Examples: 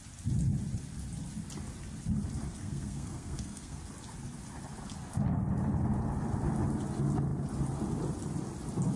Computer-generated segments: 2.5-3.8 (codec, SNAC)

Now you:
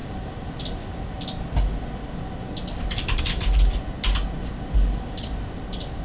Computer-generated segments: none

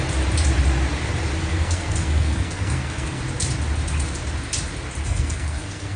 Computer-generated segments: 1.5-3.2 (codec, SNAC); 5.0-6.0

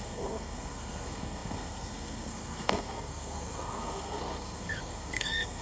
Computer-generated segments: 0.0-5.6 (codec, SNAC)